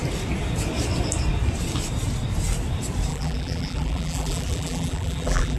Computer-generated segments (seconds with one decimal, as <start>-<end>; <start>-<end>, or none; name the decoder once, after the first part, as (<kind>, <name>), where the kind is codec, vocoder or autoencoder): 3.1-5.6 (vocoder, BigVGAN v2)